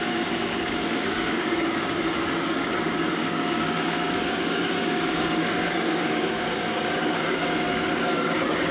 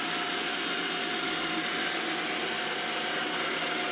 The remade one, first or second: first